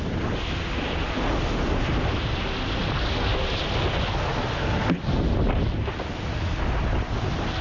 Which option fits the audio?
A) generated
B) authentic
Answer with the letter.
B